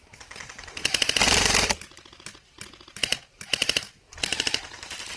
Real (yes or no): yes